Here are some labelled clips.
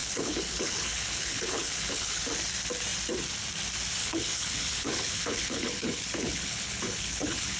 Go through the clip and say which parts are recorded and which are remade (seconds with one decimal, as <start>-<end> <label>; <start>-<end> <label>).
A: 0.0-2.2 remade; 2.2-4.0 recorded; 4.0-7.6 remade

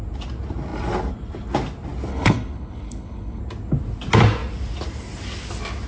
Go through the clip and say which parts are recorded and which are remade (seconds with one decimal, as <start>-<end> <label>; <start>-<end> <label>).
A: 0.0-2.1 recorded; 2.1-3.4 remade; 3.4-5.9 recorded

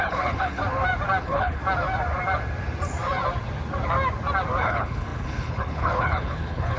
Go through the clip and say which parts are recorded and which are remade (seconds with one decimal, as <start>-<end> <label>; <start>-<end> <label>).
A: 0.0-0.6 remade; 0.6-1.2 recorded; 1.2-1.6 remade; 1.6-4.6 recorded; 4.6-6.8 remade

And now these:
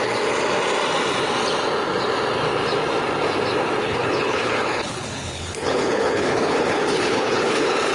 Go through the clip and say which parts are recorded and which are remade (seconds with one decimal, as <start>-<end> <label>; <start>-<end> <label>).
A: 0.0-3.8 recorded; 3.8-7.9 remade

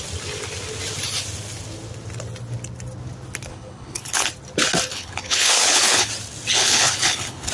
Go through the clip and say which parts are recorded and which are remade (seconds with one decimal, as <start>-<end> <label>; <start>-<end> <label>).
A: 0.0-3.5 recorded; 3.5-4.3 remade; 4.3-4.9 recorded; 4.9-6.1 remade; 6.1-6.5 recorded; 6.5-7.5 remade

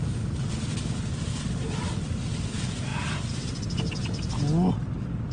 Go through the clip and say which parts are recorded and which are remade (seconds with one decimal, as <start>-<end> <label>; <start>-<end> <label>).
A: 0.0-5.3 recorded